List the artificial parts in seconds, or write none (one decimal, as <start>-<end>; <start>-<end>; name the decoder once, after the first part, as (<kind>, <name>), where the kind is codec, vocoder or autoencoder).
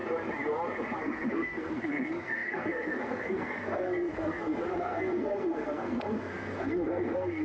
1.0-7.4 (codec, SNAC)